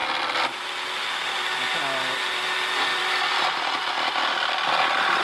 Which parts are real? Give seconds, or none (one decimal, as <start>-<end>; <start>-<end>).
0.0-0.9